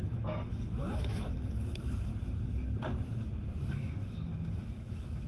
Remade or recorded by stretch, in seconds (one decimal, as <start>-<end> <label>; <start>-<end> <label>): 0.0-2.1 remade; 2.1-3.6 recorded; 3.6-5.3 remade